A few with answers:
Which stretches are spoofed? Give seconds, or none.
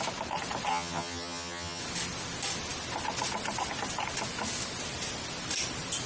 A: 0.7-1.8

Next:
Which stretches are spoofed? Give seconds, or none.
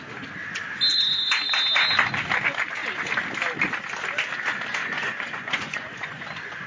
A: 0.9-1.5; 4.8-6.7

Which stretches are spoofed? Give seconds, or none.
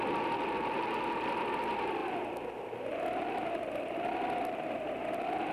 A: none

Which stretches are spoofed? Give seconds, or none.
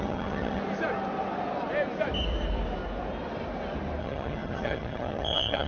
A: 0.0-0.6; 4.0-5.7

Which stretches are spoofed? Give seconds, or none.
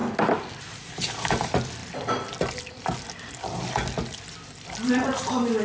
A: none